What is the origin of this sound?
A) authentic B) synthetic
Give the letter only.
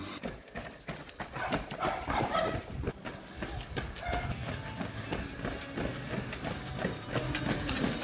A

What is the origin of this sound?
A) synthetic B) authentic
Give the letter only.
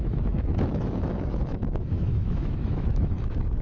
A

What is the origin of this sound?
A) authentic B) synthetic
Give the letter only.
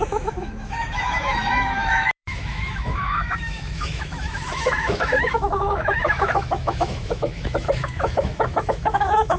B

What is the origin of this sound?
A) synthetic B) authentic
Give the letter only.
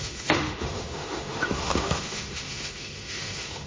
A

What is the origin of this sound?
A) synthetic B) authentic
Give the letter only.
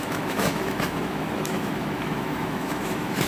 A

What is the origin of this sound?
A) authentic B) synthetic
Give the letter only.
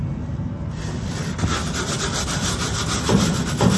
A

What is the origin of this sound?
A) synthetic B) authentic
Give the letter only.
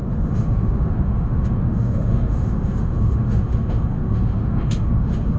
A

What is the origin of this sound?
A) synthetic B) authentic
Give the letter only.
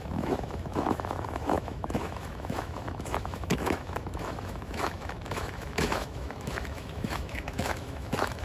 A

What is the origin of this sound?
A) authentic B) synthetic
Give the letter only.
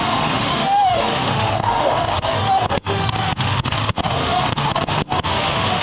B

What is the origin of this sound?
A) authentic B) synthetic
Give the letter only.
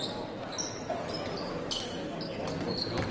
A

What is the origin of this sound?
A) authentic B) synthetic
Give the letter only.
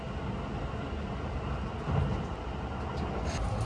A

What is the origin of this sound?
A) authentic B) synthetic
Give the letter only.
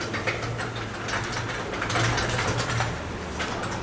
A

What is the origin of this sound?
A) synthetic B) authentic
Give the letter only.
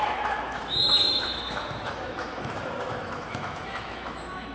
A